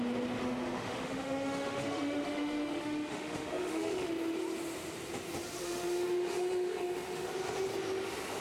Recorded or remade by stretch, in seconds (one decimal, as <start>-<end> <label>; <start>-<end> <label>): 0.0-0.4 recorded; 0.4-4.1 remade; 4.1-5.6 recorded; 5.6-7.3 remade; 7.3-8.4 recorded